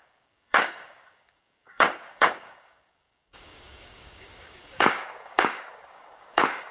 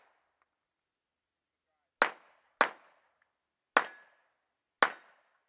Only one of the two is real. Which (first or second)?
second